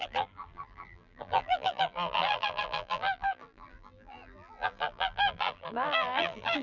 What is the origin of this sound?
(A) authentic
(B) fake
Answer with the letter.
B